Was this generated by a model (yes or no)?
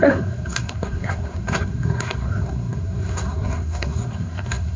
yes